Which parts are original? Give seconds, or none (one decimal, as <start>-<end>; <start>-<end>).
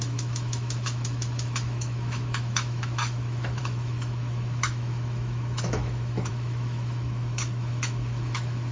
none